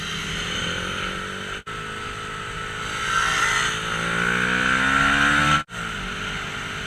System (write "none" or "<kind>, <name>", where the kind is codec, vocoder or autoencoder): none